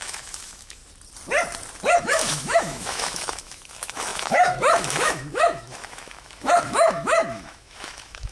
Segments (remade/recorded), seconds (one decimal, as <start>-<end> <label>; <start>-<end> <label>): 0.0-0.8 remade; 0.8-2.0 recorded; 2.0-8.3 remade